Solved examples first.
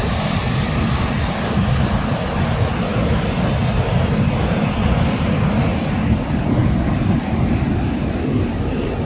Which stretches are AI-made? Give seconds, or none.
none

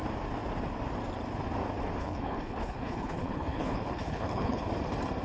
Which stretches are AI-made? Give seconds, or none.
2.0-4.7 (codec, HILCodec)

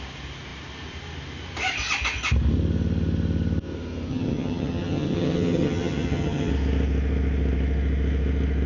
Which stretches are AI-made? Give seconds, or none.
4.1-6.5 (vocoder, HiFi-GAN)

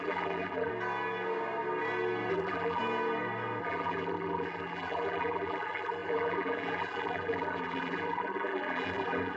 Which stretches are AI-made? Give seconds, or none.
0.0-0.7 (vocoder, BigVGAN v2); 2.3-2.8; 3.6-9.4

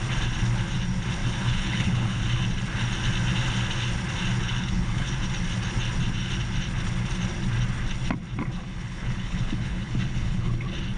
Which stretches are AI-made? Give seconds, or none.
1.2-2.2 (codec, HILCodec); 4.4-5.1; 8.6-10.5

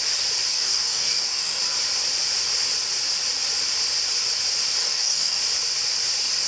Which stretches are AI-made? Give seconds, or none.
0.5-1.6 (codec, DAC); 4.8-5.4

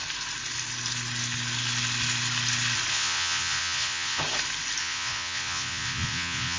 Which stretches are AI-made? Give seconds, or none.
2.9-4.2 (vocoder, Vocos); 4.8-6.6